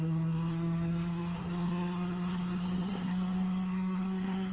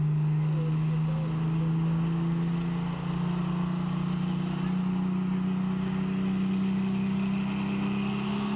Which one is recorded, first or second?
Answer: second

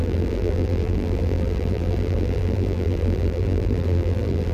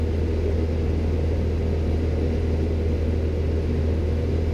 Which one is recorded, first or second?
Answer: second